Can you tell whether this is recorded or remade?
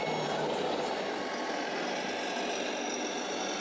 recorded